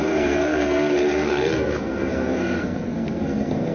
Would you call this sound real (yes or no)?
no